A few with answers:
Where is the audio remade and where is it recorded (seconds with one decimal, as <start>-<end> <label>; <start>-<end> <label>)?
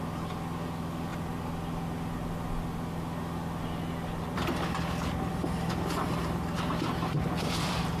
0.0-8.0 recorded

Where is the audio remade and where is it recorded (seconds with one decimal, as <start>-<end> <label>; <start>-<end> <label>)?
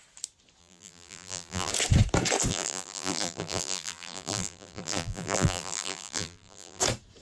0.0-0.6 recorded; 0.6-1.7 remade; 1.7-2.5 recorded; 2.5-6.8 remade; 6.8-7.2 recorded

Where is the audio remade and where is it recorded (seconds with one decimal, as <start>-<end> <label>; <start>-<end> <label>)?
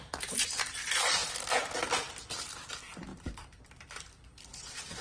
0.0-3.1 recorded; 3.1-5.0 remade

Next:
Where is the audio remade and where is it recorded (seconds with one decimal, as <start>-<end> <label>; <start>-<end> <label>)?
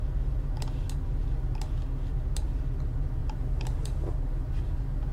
0.0-3.2 recorded; 3.2-5.1 remade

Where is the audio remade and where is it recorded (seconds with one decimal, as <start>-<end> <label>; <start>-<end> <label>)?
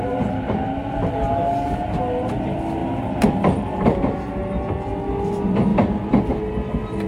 0.0-2.8 recorded; 2.8-4.0 remade; 4.0-7.1 recorded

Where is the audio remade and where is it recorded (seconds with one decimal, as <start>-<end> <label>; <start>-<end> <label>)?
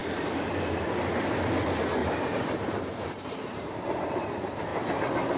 0.0-1.1 remade; 1.1-2.0 recorded; 2.0-3.8 remade; 3.8-5.4 recorded